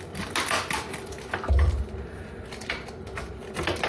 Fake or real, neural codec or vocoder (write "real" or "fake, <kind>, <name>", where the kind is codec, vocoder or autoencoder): real